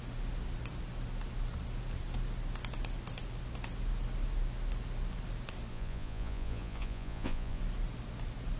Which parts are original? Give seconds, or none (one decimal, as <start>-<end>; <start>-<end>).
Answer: 0.0-5.7; 7.6-8.6